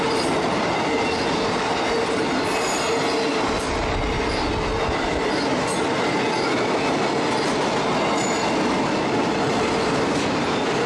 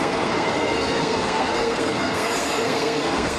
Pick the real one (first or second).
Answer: first